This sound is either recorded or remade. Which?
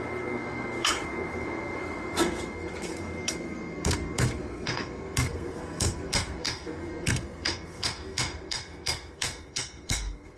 remade